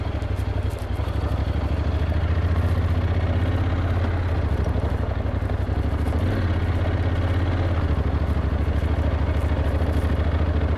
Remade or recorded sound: recorded